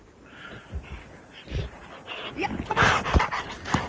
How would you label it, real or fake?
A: fake